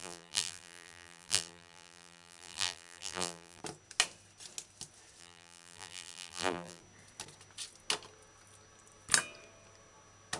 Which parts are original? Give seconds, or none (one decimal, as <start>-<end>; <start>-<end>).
3.6-5.2; 6.8-10.4